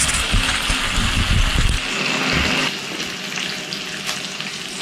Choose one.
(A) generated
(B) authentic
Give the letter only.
B